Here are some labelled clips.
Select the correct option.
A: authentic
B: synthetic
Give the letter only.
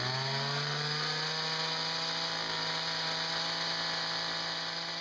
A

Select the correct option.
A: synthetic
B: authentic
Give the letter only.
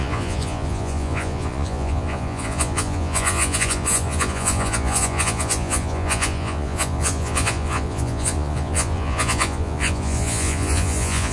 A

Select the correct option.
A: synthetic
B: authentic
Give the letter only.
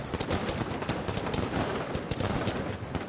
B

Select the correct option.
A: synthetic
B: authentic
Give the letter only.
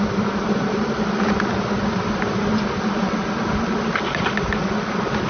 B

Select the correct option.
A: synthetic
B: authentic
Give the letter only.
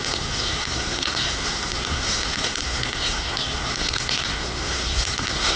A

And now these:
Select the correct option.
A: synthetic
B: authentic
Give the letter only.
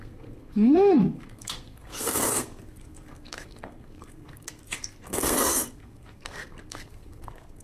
A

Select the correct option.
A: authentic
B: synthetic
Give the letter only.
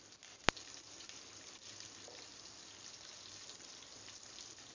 A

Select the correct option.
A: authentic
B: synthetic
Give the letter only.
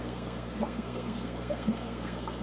B